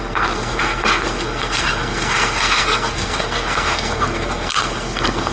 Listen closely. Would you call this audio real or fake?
fake